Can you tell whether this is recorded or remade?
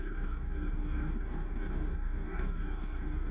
remade